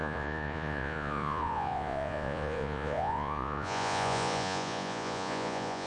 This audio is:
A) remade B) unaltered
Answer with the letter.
A